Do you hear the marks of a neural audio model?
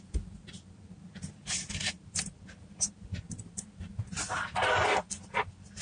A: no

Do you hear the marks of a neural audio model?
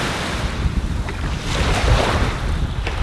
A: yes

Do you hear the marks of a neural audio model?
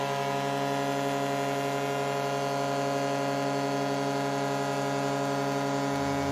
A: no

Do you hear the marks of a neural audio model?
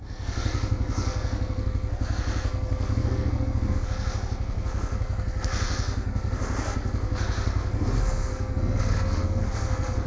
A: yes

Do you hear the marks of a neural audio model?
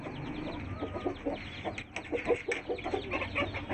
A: no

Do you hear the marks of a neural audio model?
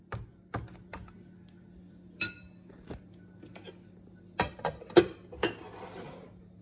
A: no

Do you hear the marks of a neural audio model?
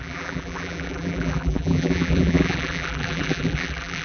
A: yes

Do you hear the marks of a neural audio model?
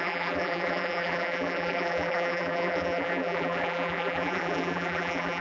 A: yes